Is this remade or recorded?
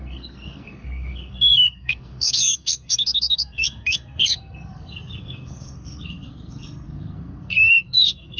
remade